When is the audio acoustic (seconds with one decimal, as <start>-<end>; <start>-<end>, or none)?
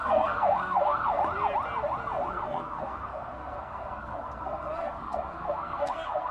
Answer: 1.2-2.3